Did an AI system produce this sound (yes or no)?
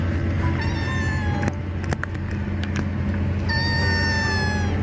no